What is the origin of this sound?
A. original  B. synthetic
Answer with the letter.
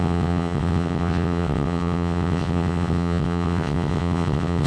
B